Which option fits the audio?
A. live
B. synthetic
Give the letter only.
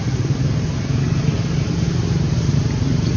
A